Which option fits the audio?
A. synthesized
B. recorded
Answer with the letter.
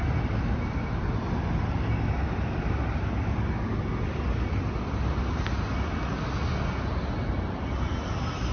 B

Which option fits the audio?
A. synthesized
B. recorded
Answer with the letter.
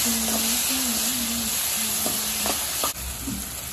B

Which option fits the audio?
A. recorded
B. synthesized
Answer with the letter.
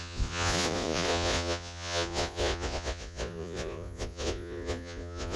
B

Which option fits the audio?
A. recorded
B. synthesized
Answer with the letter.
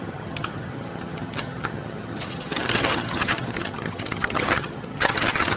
B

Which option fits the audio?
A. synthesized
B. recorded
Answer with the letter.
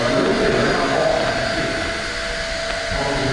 B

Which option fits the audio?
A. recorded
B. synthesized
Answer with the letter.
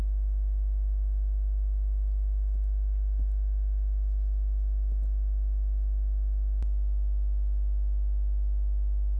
A